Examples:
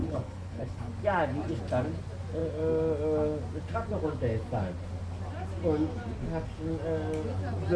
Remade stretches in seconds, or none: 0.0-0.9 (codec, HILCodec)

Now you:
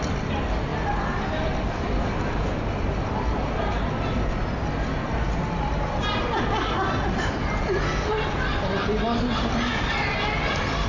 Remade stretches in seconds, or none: none

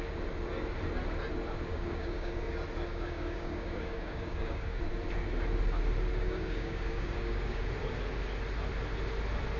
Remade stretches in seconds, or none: 1.7-2.5 (codec, DAC); 2.9-4.8; 6.1-7.6

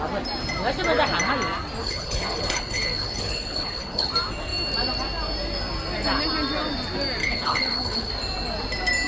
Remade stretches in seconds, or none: 1.8-4.1 (codec, HILCodec); 7.2-8.1

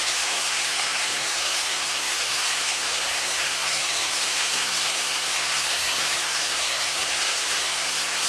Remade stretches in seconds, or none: 0.0-8.3 (codec, SNAC)

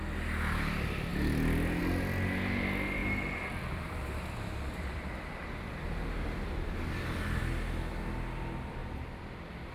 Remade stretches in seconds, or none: 3.0-7.4 (vocoder, BigVGAN v2); 8.8-9.7

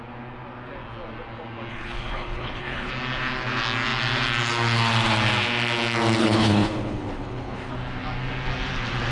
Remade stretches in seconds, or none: 1.7-2.9 (codec, HILCodec); 6.2-7.7